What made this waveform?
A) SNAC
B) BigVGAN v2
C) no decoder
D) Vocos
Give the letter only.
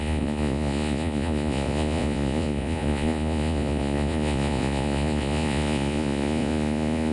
D